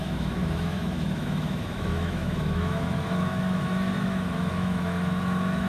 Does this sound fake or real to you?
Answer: fake